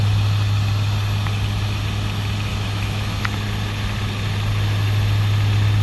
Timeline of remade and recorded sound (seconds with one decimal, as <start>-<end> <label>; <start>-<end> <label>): 0.0-2.5 recorded; 2.5-3.2 remade; 3.2-5.8 recorded